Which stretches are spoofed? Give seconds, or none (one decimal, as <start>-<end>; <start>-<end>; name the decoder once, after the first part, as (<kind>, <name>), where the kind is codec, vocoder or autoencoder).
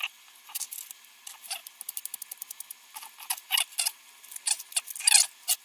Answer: none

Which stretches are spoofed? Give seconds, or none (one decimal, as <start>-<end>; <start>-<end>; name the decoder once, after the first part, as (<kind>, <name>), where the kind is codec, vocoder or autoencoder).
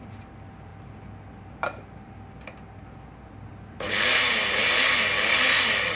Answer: none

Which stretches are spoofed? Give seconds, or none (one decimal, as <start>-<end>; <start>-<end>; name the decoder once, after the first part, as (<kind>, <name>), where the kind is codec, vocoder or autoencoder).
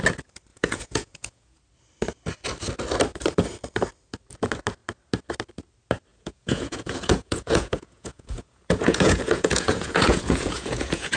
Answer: 0.5-1.6 (vocoder, Vocos); 6.1-11.2